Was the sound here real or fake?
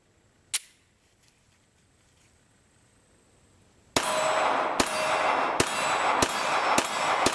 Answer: real